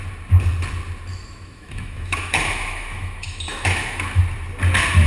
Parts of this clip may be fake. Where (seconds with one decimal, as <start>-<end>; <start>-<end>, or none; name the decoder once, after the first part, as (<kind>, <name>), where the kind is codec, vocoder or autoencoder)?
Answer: 1.1-4.2 (autoencoder, DAC-VAE)